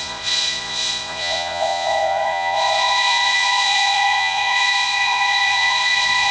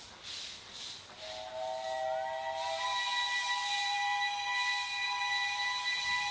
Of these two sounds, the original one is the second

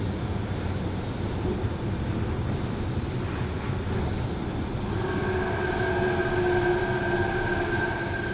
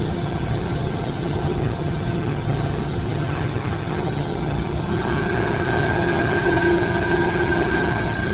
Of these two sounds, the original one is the first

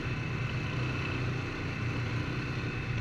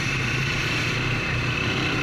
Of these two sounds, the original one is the first